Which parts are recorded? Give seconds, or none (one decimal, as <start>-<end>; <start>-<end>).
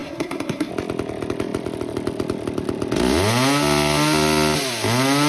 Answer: 0.7-5.3